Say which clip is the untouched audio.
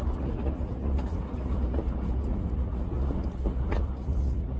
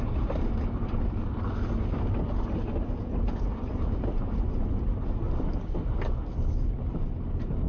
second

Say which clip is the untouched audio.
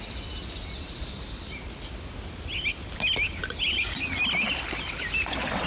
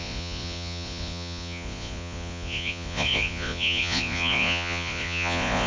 first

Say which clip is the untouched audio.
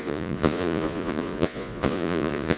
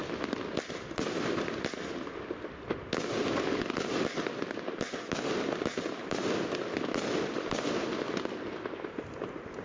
second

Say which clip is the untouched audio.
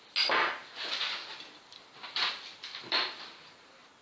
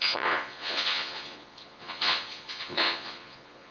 first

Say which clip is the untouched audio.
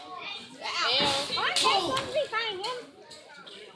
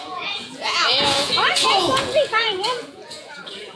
first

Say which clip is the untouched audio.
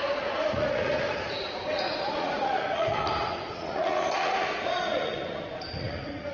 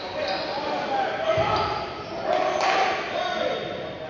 second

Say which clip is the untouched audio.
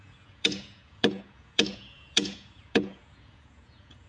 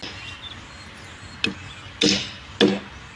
second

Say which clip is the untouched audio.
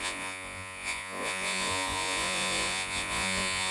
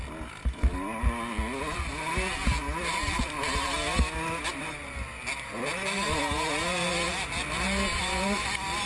second